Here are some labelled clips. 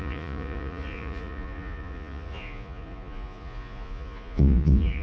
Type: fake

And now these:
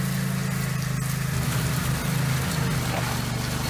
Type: real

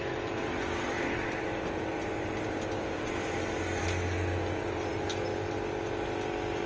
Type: real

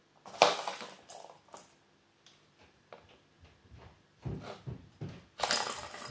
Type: real